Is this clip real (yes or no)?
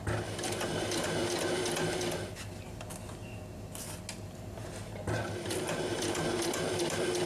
yes